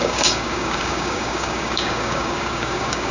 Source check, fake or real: fake